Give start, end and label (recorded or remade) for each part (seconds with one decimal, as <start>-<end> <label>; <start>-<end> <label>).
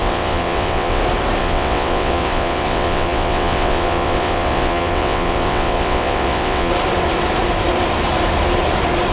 0.0-1.0 remade; 1.0-1.4 recorded; 1.4-6.7 remade; 6.7-9.1 recorded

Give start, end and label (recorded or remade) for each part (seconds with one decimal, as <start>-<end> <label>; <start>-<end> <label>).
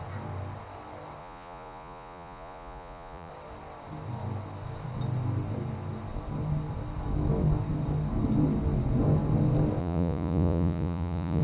0.0-1.2 recorded; 1.2-3.3 remade; 3.3-9.8 recorded; 9.8-11.4 remade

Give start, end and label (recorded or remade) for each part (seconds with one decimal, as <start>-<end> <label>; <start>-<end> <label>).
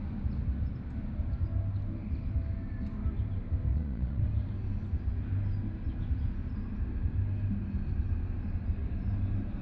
0.0-3.7 recorded; 3.7-4.2 remade; 4.2-9.6 recorded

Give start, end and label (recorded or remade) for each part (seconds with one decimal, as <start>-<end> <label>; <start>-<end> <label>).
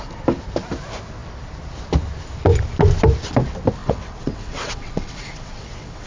0.0-3.8 recorded; 3.8-6.1 remade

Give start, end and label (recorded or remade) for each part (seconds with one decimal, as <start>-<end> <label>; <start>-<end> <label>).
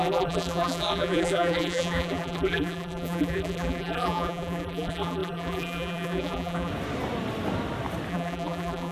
0.0-6.7 remade; 6.7-8.1 recorded; 8.1-8.9 remade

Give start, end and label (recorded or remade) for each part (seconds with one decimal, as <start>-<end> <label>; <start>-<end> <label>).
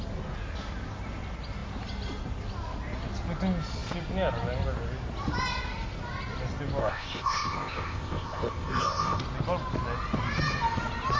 0.0-6.8 recorded; 6.8-9.2 remade; 9.2-11.2 recorded